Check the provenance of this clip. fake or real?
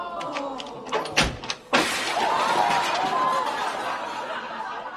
real